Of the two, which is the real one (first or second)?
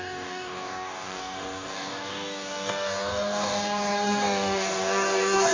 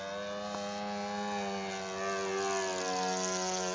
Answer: second